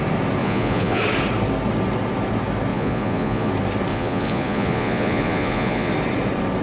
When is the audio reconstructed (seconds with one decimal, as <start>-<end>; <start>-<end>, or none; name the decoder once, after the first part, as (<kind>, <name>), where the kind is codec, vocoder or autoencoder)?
0.4-1.0 (vocoder, Vocos); 2.7-3.5; 3.9-5.9